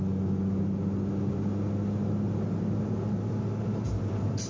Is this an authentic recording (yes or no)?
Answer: yes